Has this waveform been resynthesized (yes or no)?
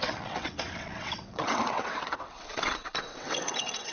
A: yes